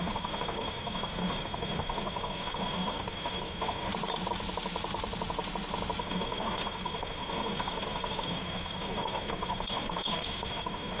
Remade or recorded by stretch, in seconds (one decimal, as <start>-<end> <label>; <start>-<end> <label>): 0.0-3.9 remade; 3.9-6.0 recorded; 6.0-11.0 remade